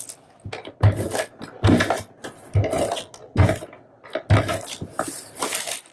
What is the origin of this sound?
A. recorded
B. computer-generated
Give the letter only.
A